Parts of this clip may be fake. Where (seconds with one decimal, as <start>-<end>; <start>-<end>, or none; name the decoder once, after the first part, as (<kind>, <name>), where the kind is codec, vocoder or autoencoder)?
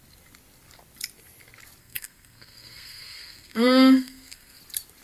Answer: 1.8-4.6 (codec, SNAC)